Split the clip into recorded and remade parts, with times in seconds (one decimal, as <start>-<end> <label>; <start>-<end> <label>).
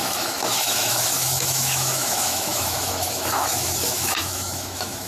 0.0-5.1 remade